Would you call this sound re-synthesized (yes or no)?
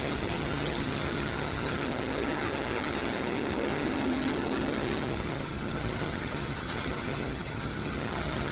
yes